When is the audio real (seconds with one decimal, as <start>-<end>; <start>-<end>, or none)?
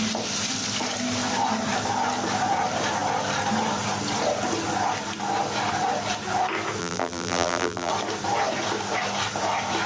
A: 0.0-6.8; 7.9-9.9